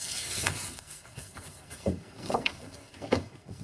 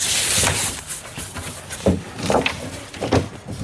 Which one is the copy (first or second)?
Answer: first